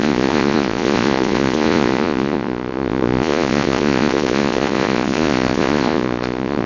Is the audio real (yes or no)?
no